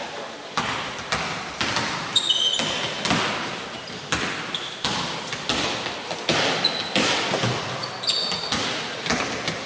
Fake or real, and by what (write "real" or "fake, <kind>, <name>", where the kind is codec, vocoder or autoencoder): real